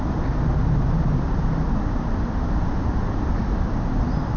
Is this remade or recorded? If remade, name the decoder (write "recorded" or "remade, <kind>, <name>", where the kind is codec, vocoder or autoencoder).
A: recorded